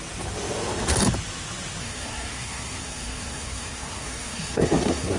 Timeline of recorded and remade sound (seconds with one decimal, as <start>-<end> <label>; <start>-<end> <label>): 0.0-1.8 recorded; 1.8-5.2 remade